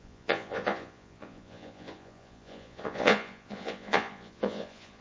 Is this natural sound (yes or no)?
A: no